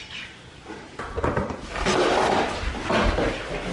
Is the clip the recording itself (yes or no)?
yes